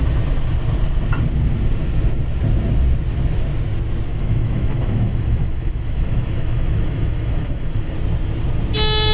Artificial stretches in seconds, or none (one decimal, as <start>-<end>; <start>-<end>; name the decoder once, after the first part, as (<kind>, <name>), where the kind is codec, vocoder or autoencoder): 4.1-7.9 (autoencoder, DAC-VAE)